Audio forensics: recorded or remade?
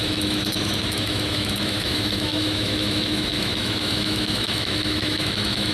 remade